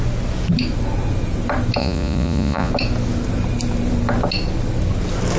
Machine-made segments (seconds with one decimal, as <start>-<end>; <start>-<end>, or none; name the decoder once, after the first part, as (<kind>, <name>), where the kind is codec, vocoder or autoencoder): 1.8-2.7 (vocoder, Vocos)